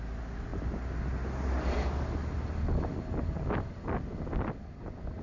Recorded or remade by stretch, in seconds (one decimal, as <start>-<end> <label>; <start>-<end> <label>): 0.0-5.2 recorded